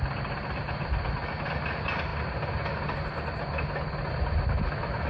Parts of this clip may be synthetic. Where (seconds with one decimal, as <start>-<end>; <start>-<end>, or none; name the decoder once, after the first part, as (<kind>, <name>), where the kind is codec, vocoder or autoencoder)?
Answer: none